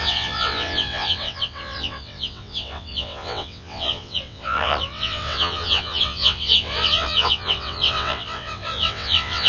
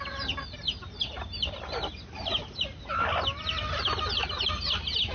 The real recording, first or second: second